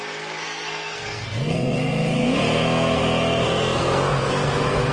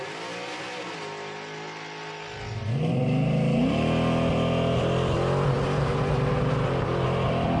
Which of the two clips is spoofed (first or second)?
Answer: first